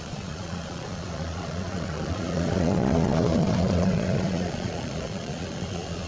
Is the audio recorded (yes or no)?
no